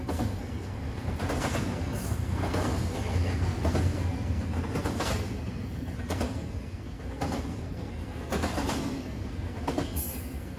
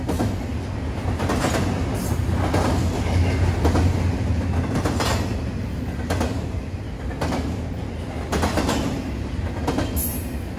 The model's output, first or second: first